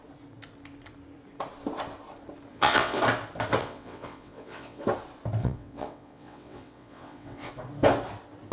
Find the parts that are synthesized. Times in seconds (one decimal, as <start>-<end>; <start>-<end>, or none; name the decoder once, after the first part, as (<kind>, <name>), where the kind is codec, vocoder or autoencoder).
2.5-3.0 (vocoder, WaveNeXt); 3.6-4.8; 5.4-7.5